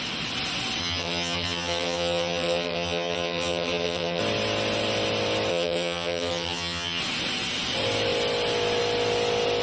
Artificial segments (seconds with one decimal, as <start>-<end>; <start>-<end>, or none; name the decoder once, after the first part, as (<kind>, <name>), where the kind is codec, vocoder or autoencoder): 0.8-4.2 (vocoder, HiFi-GAN); 5.5-7.0